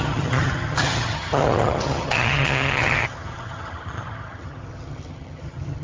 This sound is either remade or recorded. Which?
remade